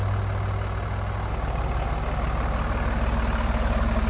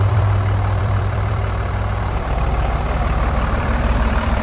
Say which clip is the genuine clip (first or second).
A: first